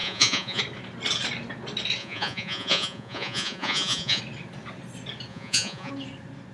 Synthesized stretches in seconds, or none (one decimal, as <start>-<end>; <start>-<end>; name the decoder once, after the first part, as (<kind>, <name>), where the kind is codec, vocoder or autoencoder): 0.0-0.6 (vocoder, Vocos); 2.0-4.2; 5.3-5.9